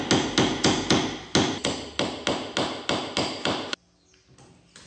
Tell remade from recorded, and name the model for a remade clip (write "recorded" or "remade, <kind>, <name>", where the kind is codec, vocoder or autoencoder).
recorded